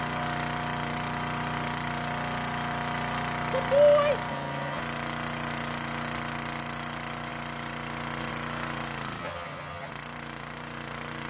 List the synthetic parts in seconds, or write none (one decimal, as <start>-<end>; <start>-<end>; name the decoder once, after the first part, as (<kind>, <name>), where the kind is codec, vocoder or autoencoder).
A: 4.3-4.8 (vocoder, HiFi-GAN); 9.2-9.9